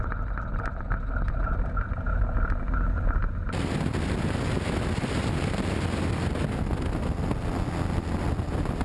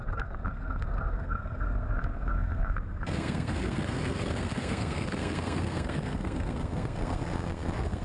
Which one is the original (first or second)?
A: first